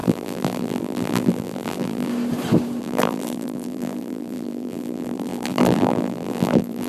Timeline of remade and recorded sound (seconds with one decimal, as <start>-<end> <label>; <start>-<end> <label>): 0.0-2.1 remade; 2.1-2.8 recorded; 2.8-6.9 remade